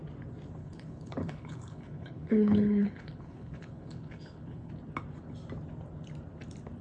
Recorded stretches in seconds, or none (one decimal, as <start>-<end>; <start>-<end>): 0.0-0.6; 4.7-6.8